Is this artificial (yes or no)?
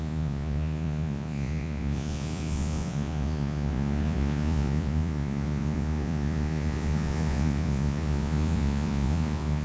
yes